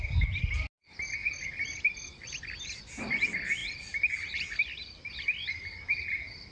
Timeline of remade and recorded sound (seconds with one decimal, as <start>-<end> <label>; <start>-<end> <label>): 0.0-1.2 recorded; 1.2-2.8 remade; 2.8-3.6 recorded; 3.6-5.0 remade; 5.0-6.5 recorded